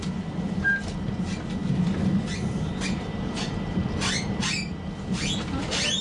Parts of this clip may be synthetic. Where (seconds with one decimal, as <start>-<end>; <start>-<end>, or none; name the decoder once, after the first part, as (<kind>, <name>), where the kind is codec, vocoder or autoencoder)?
0.0-1.6 (vocoder, BigVGAN v2); 2.5-6.0